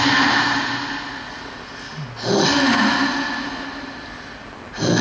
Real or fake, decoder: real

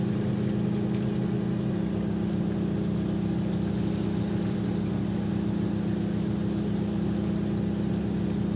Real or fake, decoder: real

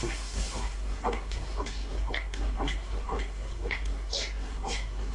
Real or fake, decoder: fake, codec, SNAC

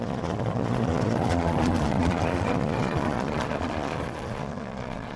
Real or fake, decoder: fake, vocoder, Vocos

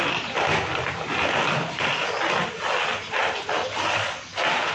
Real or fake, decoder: real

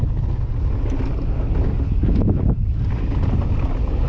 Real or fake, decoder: real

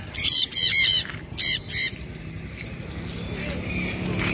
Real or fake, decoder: real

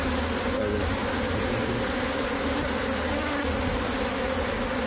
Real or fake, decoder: real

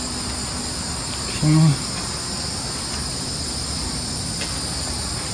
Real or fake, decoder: real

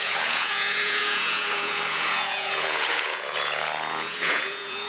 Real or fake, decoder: fake, vocoder, Vocos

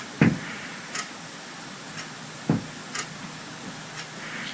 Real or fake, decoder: real